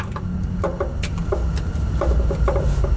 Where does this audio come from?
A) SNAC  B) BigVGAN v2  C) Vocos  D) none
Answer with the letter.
D